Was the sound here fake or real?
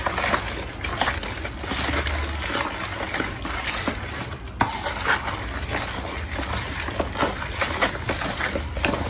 real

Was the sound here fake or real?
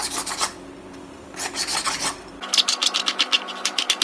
real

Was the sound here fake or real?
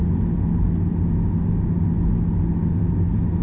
real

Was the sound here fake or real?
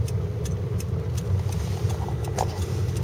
real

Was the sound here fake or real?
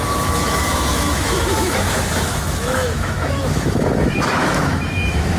fake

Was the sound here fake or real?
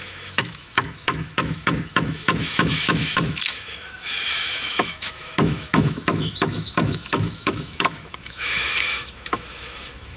fake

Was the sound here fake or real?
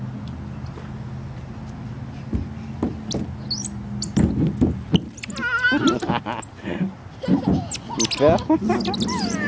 real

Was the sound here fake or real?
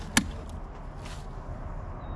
real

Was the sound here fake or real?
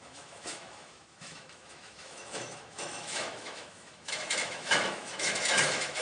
fake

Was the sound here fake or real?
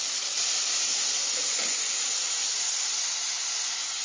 real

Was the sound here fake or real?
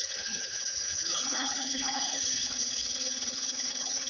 fake